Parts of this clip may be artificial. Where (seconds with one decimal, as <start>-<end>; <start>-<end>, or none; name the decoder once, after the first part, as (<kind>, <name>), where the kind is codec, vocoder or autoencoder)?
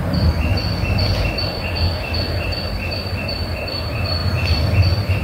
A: 0.0-0.5 (vocoder, BigVGAN v2); 3.1-4.2; 4.8-5.2